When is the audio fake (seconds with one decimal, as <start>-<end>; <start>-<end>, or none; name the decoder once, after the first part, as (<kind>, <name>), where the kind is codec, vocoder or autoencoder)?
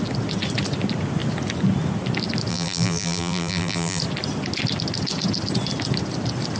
2.5-4.0 (vocoder, BigVGAN v2)